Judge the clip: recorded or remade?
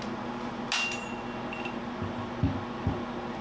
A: recorded